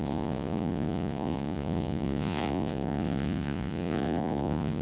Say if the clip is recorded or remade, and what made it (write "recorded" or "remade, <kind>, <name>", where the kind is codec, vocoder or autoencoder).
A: remade, vocoder, Vocos